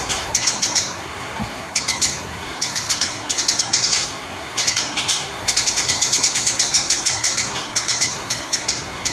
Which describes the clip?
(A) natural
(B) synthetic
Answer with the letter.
B